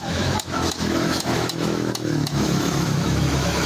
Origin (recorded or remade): remade